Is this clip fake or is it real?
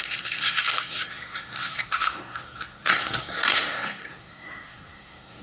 fake